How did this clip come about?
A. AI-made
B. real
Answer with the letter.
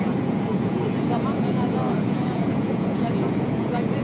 A